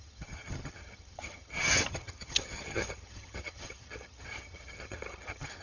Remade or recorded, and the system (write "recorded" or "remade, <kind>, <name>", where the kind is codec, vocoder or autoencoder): remade, vocoder, HiFi-GAN